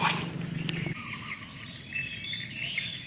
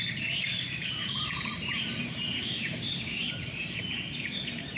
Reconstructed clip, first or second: second